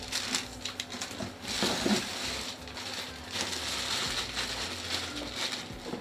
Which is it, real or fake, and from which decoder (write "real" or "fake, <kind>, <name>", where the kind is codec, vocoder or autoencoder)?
real